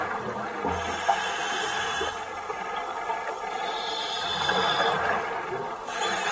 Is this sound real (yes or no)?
yes